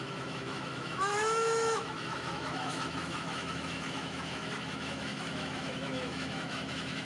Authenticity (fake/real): fake